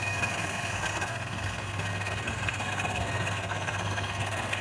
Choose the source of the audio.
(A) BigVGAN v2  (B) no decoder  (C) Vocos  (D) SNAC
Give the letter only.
D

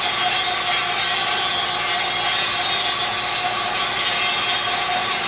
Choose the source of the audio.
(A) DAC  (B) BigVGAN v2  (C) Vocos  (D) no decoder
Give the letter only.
D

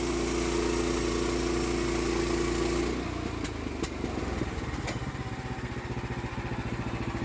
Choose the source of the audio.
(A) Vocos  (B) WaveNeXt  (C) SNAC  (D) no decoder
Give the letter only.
D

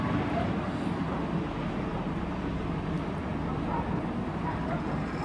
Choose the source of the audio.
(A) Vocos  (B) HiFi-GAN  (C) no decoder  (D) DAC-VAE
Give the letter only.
C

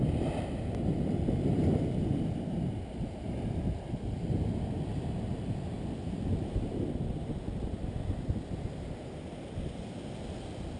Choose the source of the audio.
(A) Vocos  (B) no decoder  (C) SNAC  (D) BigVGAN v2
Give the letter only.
B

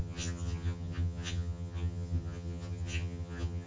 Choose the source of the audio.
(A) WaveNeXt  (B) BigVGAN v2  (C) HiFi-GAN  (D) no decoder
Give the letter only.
C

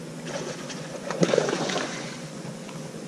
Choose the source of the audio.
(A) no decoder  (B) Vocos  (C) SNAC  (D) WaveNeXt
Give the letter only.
B